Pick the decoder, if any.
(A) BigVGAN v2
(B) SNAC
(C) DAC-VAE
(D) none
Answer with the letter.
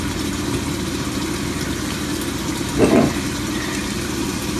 D